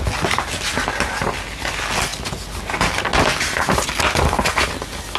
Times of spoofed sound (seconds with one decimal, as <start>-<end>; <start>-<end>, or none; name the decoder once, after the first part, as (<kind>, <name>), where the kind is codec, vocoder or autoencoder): none